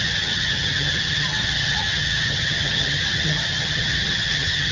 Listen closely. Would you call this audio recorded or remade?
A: remade